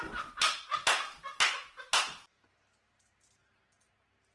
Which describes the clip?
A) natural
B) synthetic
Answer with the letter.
A